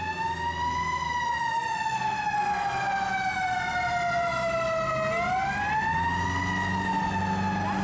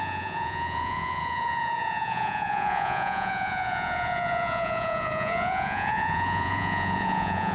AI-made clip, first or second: second